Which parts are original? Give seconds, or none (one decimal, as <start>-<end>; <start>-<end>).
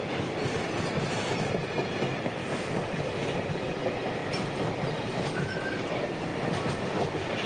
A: 0.0-7.5